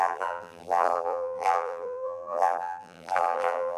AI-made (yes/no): yes